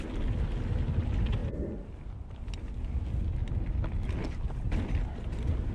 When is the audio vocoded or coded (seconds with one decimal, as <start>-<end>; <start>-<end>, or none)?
none